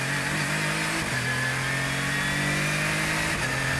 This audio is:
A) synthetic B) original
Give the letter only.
B